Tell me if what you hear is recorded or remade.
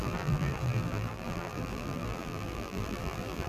remade